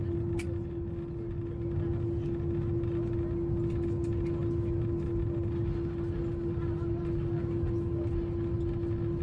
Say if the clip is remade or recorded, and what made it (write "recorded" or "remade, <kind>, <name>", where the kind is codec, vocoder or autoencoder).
recorded